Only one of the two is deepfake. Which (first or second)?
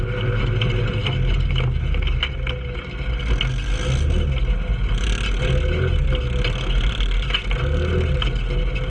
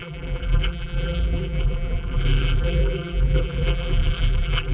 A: second